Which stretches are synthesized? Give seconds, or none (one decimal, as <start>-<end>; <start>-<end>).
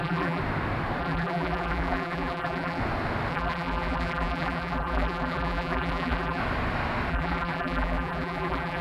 0.0-0.4; 1.0-2.8; 3.3-6.4; 7.1-8.8